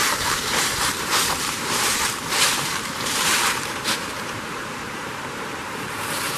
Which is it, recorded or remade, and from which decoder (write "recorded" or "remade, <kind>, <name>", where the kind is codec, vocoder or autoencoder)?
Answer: remade, vocoder, BigVGAN v2